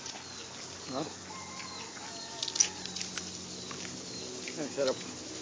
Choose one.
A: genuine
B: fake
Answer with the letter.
A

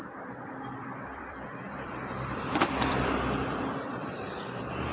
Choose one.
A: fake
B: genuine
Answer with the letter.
A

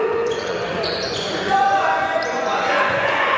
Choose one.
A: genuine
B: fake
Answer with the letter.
B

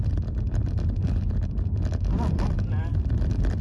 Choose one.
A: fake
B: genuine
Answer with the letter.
B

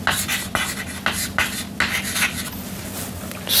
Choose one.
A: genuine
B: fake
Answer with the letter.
A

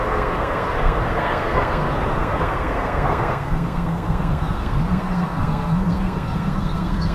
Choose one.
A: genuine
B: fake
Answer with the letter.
B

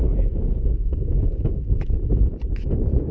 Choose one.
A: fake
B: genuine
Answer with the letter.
B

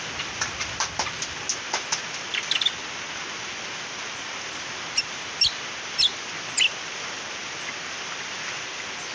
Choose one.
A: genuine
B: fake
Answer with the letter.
A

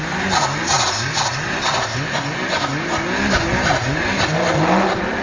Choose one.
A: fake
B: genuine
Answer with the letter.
B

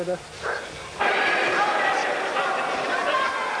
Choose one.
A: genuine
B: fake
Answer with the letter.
A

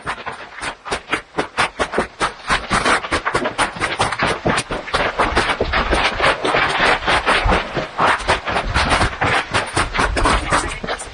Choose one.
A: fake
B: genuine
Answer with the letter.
B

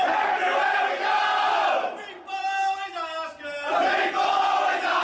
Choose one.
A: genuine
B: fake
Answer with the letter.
A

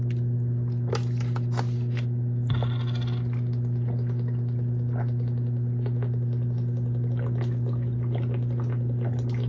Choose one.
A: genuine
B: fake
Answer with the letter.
A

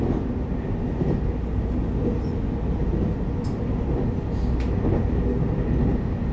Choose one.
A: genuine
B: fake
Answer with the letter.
A